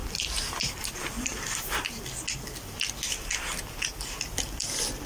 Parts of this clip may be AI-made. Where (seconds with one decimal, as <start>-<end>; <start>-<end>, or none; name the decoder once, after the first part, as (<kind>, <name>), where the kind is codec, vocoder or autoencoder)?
none